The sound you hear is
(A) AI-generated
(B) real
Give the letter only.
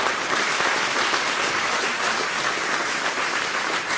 A